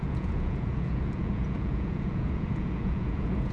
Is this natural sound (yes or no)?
no